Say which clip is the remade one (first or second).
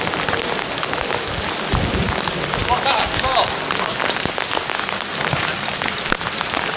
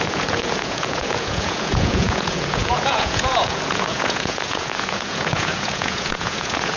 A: second